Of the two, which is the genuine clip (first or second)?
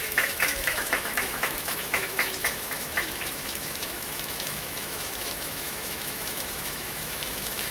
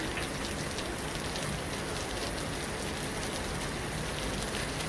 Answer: second